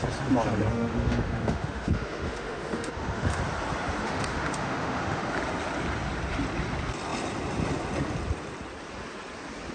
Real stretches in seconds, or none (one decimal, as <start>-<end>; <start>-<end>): 0.0-0.7; 3.4-4.0; 5.3-9.7